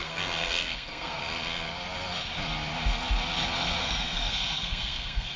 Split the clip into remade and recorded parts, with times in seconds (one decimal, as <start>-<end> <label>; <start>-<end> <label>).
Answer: 0.0-1.2 remade; 1.2-3.8 recorded; 3.8-5.4 remade